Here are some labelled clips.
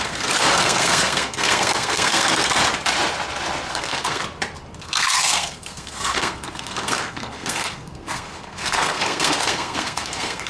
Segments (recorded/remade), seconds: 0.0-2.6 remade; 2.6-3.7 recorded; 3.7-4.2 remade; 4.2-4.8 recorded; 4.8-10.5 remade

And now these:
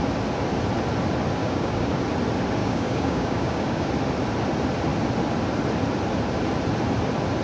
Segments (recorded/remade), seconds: 0.0-1.4 recorded; 1.4-2.0 remade; 2.0-2.6 recorded; 2.6-3.9 remade; 3.9-7.4 recorded

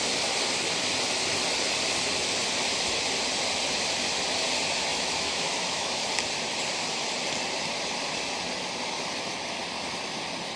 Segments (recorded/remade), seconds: 0.0-4.9 recorded; 4.9-6.1 remade; 6.1-10.6 recorded